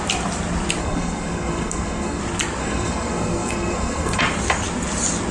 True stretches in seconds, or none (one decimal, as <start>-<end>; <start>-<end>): 0.0-0.8; 2.2-2.6; 4.2-5.3